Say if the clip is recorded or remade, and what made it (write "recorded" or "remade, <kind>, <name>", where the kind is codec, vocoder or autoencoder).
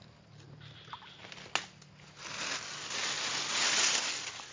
recorded